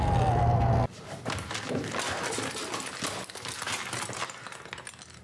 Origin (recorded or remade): recorded